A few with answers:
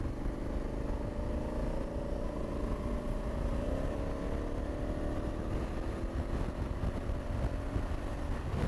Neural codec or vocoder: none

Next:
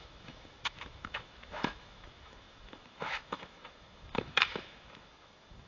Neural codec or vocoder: autoencoder, DAC-VAE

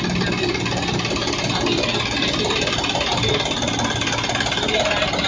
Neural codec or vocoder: none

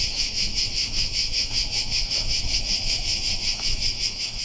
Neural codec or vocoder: autoencoder, DAC-VAE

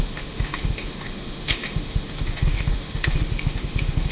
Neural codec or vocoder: autoencoder, DAC-VAE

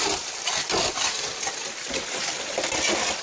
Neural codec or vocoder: none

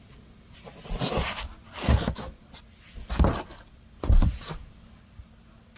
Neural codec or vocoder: none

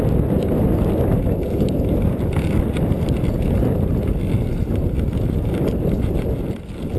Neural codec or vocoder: none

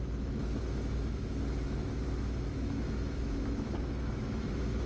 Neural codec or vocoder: autoencoder, DAC-VAE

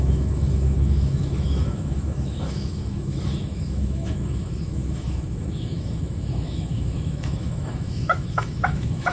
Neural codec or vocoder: autoencoder, DAC-VAE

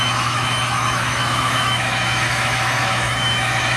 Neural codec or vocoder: autoencoder, DAC-VAE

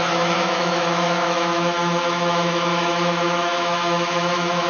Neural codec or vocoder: autoencoder, DAC-VAE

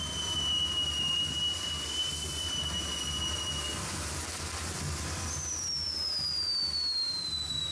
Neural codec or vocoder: none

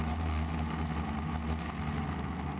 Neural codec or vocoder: none